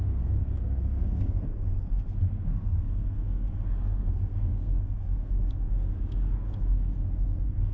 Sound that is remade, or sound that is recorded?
remade